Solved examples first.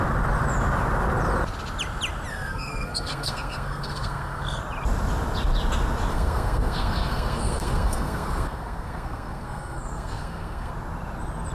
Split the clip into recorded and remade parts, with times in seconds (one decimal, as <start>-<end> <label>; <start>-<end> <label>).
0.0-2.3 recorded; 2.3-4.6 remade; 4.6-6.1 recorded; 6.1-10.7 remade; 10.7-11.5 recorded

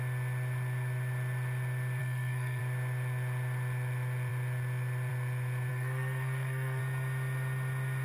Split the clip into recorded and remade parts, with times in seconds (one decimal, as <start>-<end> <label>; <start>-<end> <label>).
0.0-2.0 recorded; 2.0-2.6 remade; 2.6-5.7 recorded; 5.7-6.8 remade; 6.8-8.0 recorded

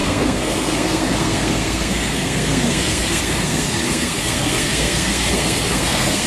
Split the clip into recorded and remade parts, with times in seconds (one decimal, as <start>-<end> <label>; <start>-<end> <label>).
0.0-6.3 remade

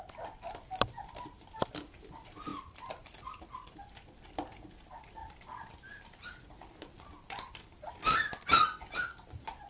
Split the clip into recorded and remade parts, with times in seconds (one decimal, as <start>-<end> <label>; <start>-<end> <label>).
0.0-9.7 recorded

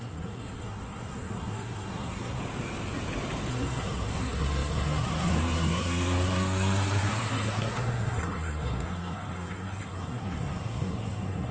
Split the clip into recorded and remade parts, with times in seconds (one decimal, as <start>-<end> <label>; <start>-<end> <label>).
0.0-2.4 remade; 2.4-3.5 recorded; 3.5-11.5 remade

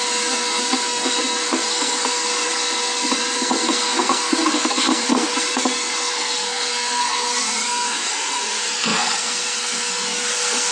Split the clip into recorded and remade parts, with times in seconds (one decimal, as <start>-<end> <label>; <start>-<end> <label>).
0.0-10.7 remade

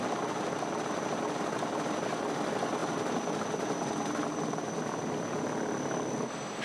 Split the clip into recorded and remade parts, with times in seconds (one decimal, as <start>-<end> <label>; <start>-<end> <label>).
0.0-6.6 recorded

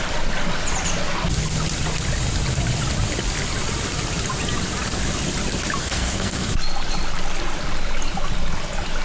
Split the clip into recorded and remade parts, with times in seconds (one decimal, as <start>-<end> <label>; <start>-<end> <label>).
0.0-5.8 recorded; 5.8-6.5 remade; 6.5-9.0 recorded